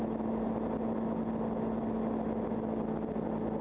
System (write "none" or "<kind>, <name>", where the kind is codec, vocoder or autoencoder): none